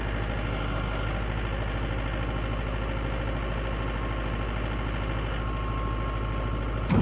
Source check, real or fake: real